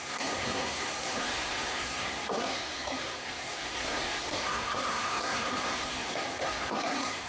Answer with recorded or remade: remade